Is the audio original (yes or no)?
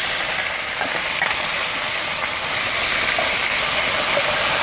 yes